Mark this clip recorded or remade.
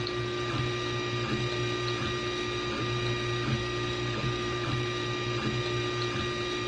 recorded